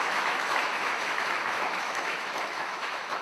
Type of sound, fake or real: fake